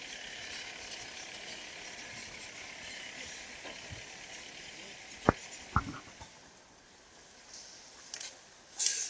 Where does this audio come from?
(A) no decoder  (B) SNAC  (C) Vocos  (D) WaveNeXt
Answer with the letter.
A